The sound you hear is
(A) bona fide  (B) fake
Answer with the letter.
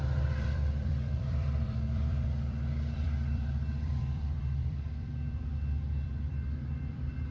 B